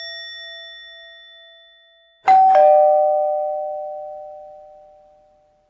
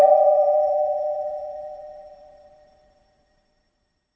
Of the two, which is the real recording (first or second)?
first